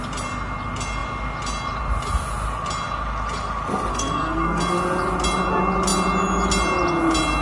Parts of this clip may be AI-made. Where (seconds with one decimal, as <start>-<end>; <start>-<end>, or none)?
3.9-4.6